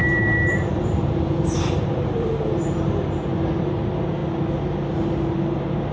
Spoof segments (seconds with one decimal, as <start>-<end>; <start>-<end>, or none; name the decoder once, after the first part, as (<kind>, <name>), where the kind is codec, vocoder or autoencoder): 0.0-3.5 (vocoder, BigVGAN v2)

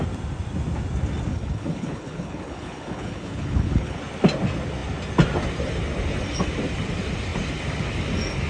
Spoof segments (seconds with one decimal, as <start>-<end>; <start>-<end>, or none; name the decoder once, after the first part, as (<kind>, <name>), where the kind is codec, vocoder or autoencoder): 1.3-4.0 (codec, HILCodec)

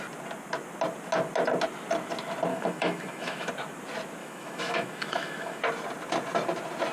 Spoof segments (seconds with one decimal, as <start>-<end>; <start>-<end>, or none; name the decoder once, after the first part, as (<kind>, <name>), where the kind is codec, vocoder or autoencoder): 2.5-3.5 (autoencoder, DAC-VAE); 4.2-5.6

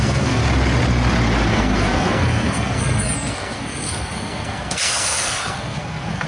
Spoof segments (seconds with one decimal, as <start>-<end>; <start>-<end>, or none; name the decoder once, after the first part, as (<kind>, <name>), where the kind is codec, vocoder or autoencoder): 0.0-0.4 (codec, SNAC); 1.5-6.3